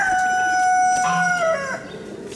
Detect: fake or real real